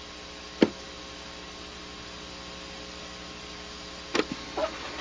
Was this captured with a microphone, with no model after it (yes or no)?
yes